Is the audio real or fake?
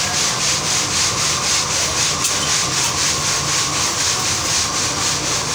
fake